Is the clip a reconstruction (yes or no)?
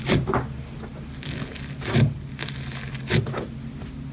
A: no